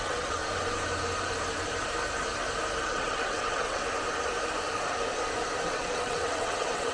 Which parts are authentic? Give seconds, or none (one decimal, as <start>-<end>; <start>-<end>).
0.4-2.8; 3.8-5.7